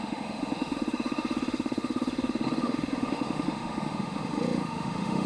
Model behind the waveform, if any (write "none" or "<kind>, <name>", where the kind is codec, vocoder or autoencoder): autoencoder, DAC-VAE